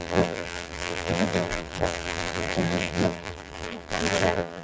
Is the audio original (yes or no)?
no